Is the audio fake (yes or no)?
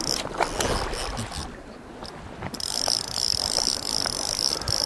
no